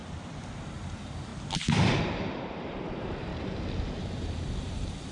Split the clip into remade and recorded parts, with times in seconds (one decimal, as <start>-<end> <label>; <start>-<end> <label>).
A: 0.0-0.6 recorded; 0.6-1.3 remade; 1.3-2.0 recorded; 2.0-3.3 remade; 3.3-4.0 recorded; 4.0-5.1 remade